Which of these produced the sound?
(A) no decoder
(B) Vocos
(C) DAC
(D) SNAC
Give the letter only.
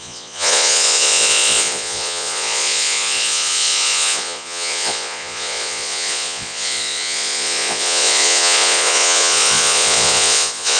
B